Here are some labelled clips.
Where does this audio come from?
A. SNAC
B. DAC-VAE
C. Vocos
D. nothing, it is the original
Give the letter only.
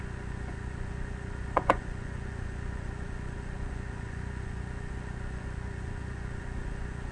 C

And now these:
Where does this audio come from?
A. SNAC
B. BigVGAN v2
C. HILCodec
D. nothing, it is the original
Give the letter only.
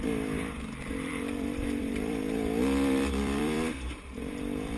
B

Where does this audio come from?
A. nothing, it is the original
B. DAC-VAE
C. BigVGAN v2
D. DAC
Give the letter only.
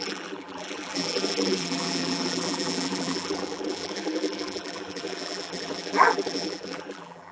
C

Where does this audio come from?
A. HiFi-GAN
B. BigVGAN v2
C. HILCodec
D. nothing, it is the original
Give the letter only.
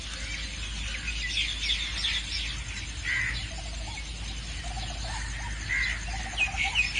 D